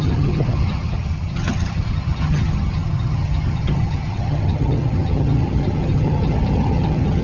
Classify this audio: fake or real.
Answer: fake